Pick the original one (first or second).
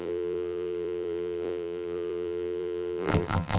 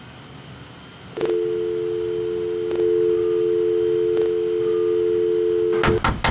second